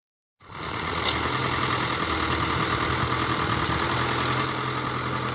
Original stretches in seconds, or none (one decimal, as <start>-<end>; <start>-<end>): 1.0-5.3